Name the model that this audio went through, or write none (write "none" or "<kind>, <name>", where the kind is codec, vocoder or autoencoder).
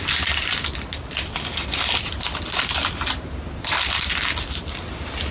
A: none